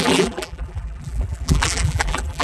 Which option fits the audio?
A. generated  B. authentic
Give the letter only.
A